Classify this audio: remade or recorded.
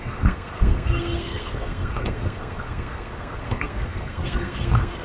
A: remade